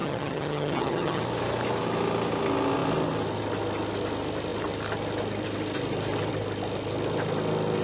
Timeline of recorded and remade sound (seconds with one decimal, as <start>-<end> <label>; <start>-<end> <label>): 0.0-1.2 remade; 1.2-7.8 recorded

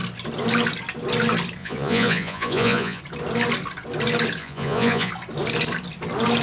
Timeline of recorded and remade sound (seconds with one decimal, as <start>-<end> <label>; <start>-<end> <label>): 0.0-1.6 recorded; 1.6-3.0 remade; 3.0-4.4 recorded; 4.4-5.1 remade; 5.1-6.4 recorded

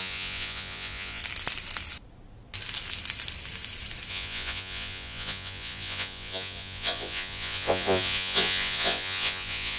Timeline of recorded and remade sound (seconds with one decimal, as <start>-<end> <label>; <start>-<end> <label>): 0.0-1.2 remade; 1.2-4.1 recorded; 4.1-9.8 remade

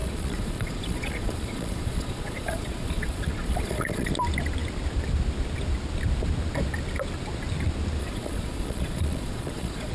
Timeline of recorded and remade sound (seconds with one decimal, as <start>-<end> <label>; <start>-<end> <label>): 0.0-4.1 remade; 4.1-8.0 recorded; 8.0-9.9 remade